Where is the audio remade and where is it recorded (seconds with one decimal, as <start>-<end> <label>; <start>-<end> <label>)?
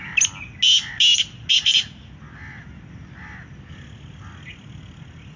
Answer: 0.0-5.4 recorded